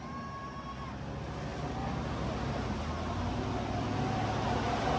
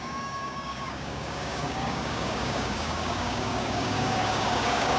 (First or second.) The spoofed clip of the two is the second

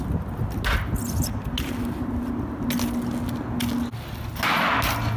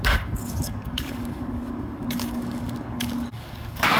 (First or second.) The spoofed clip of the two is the second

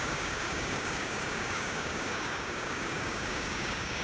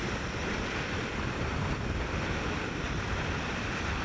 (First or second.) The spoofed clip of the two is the first